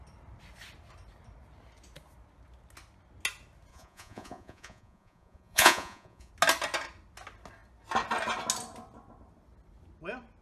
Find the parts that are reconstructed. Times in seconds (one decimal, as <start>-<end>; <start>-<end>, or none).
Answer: 3.7-6.3